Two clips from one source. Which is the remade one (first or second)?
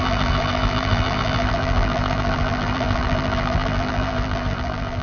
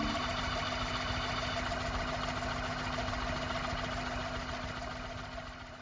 first